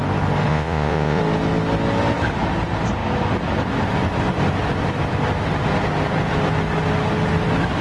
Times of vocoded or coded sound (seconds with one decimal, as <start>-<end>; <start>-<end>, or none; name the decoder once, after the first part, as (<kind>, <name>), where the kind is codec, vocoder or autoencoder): 0.5-1.2 (vocoder, Vocos)